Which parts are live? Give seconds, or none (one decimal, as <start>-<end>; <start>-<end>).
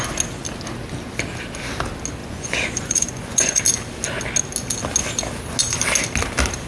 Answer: 0.0-2.2; 3.6-6.7